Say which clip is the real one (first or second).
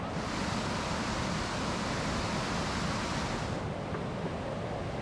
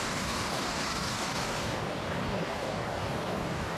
first